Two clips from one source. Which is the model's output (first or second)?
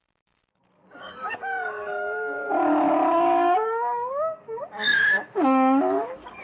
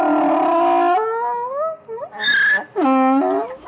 first